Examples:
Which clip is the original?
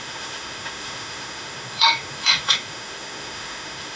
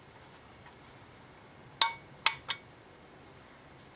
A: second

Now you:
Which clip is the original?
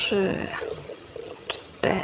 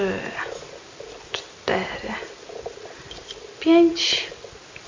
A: second